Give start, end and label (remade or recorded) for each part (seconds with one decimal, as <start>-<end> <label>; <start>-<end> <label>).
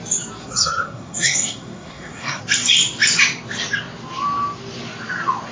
0.0-0.4 recorded; 0.4-2.4 remade; 2.4-5.5 recorded